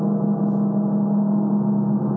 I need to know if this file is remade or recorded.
recorded